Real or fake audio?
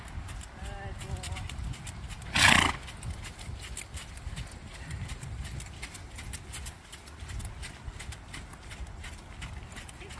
real